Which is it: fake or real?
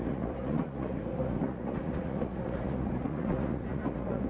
fake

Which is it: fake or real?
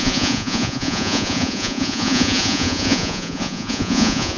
fake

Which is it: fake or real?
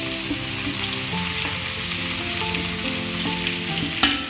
real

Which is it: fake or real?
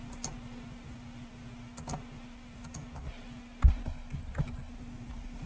real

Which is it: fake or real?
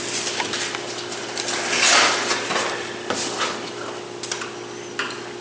real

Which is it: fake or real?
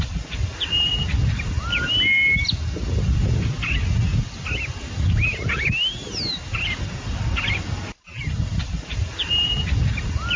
real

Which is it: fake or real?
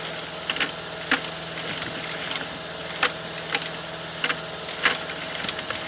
real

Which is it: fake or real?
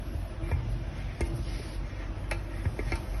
real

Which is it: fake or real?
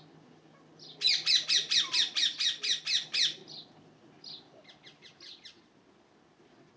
real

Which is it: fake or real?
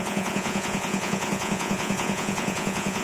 fake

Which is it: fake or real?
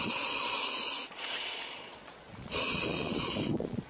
fake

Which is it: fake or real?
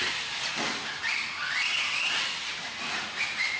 real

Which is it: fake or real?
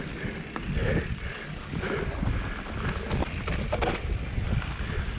real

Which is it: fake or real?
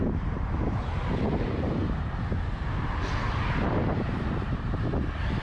real